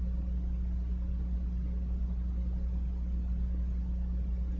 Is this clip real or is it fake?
real